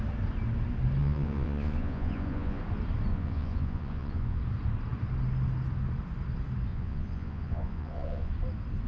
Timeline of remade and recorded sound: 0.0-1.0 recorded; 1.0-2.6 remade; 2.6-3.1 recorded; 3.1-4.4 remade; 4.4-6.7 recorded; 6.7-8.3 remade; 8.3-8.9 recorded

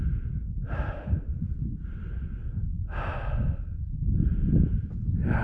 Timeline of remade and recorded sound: 0.0-5.4 recorded

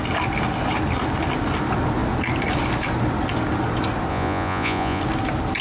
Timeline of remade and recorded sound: 0.0-4.1 recorded; 4.1-5.0 remade; 5.0-5.6 recorded